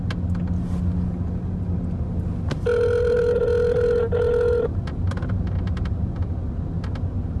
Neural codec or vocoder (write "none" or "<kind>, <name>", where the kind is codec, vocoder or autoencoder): none